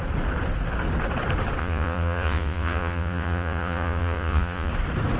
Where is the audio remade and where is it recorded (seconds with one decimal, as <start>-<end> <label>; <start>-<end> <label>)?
0.0-1.6 recorded; 1.6-4.7 remade; 4.7-5.2 recorded